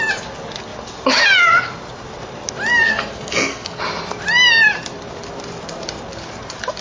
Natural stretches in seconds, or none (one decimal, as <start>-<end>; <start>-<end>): 0.0-2.8; 3.8-6.8